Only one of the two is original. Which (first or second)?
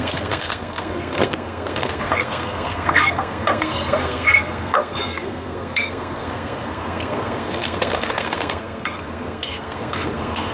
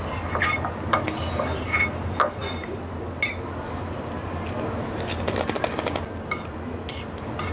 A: second